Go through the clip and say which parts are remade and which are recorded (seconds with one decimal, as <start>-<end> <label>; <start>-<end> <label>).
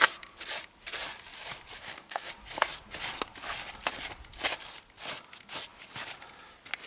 0.0-1.8 recorded; 1.8-2.3 remade; 2.3-6.9 recorded